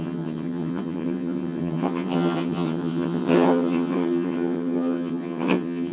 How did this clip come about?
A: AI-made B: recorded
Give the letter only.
A